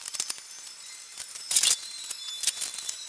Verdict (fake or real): real